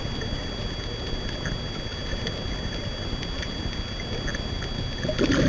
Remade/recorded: recorded